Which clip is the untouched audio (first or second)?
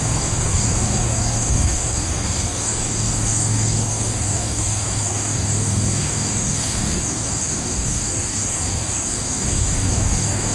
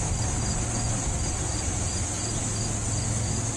second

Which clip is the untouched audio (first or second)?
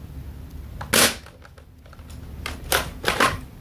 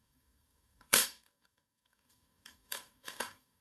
first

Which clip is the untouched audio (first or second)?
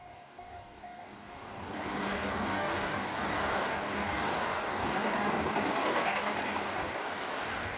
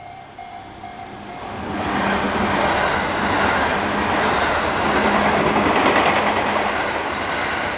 second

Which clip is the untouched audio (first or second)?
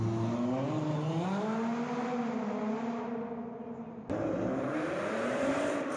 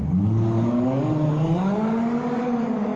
first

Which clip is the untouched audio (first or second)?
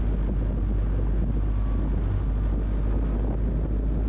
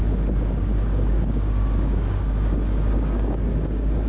first